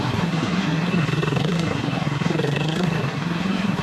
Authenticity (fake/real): fake